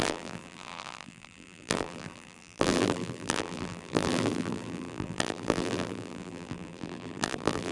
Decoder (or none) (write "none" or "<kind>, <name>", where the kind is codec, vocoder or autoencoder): vocoder, BigVGAN v2